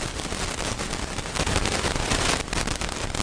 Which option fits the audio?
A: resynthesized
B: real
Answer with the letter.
B